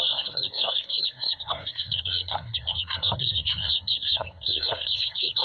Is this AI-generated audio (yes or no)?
yes